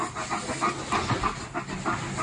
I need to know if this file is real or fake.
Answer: real